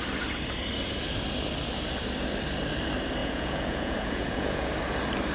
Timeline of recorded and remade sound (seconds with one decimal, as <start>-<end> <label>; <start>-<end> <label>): 0.0-3.2 recorded; 3.2-4.7 remade; 4.7-5.3 recorded